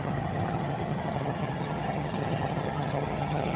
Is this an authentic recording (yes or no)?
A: no